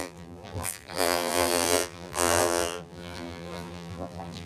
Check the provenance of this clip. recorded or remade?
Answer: remade